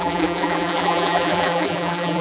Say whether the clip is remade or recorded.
remade